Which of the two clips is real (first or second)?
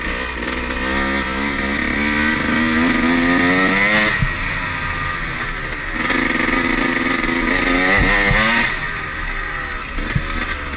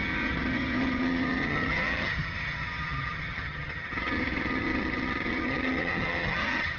first